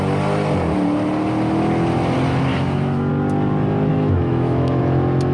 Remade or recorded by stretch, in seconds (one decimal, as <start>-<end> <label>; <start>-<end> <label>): 0.0-2.5 recorded; 2.5-3.1 remade; 3.1-3.9 recorded; 3.9-4.8 remade; 4.8-5.3 recorded